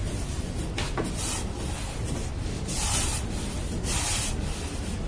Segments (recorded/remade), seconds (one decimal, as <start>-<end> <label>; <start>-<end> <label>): 0.0-5.1 recorded